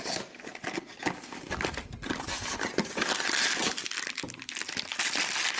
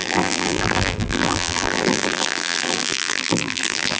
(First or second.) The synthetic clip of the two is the second